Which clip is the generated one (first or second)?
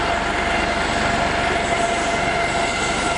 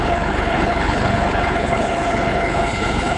second